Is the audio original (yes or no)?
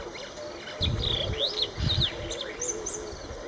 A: yes